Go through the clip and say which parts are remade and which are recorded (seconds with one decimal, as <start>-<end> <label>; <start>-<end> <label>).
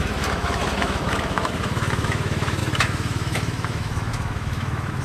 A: 0.0-5.0 remade